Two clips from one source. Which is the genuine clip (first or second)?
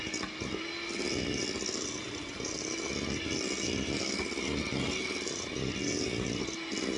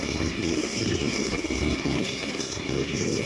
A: first